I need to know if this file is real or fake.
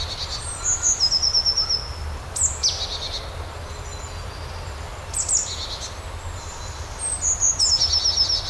real